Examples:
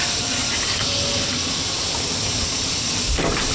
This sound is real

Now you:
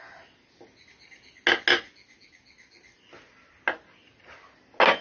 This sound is real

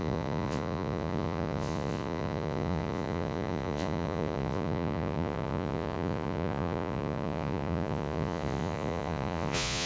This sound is fake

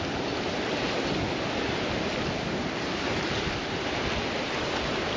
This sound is real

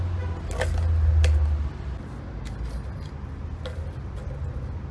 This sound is real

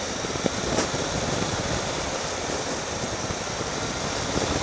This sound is real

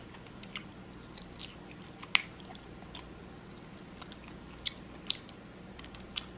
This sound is real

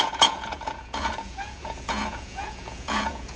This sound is fake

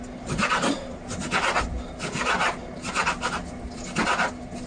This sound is real